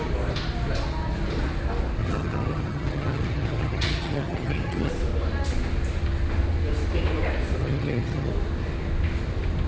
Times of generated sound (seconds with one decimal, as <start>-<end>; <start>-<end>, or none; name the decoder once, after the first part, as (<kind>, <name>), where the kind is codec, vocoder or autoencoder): 2.0-4.9 (vocoder, HiFi-GAN); 7.6-8.3